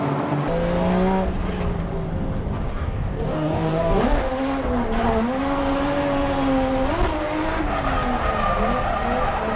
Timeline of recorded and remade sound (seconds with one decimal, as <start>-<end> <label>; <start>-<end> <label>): 0.0-2.7 recorded; 2.7-4.3 remade; 4.3-9.6 recorded